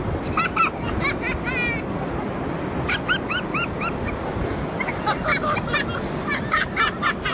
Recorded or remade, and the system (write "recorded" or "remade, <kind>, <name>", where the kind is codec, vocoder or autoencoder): recorded